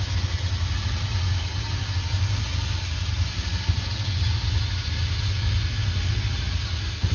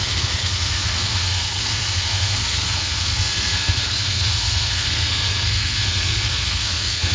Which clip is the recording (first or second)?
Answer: first